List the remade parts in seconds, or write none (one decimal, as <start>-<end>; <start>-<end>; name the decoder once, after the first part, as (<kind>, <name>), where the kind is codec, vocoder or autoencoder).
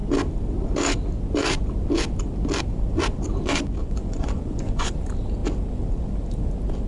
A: 3.8-4.9 (vocoder, Vocos)